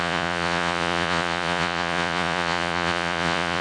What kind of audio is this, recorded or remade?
remade